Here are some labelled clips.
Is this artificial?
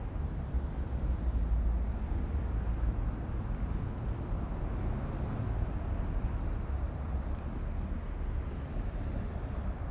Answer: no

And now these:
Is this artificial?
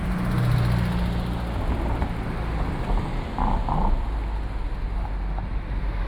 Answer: no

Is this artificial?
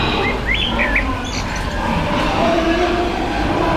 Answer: yes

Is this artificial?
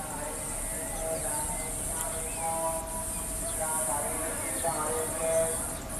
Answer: no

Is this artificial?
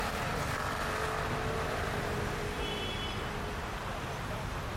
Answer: no